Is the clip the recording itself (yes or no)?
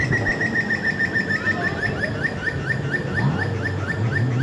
yes